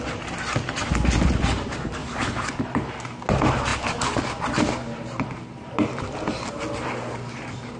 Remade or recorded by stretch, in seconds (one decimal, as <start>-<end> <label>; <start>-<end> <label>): 0.0-2.0 recorded; 2.0-2.6 remade; 2.6-7.8 recorded